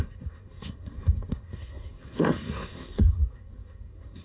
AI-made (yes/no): yes